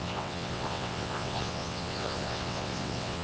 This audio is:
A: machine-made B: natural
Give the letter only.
A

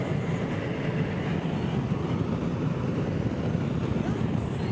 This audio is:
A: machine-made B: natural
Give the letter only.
B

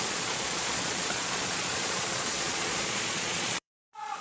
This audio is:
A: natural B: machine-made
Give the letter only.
B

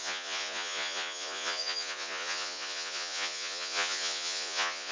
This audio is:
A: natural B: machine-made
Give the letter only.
B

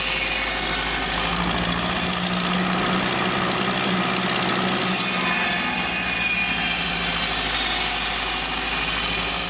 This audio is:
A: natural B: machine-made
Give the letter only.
A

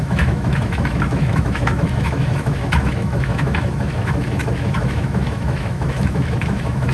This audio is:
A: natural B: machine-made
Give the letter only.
B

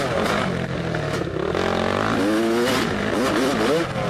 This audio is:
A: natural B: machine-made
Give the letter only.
A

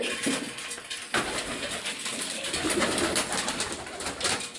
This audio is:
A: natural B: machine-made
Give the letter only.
A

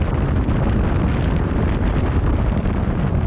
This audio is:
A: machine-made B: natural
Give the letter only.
B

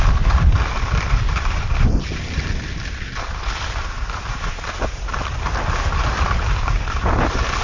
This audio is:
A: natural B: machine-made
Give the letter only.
A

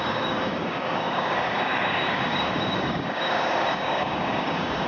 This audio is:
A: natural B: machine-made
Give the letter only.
B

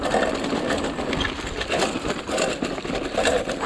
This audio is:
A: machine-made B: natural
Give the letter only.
B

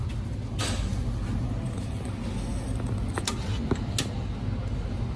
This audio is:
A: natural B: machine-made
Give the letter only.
A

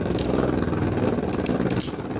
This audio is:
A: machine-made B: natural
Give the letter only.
B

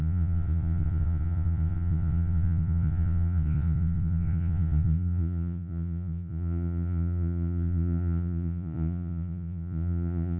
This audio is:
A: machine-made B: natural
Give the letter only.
A